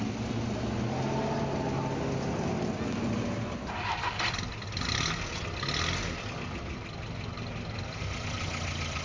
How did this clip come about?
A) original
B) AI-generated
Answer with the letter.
A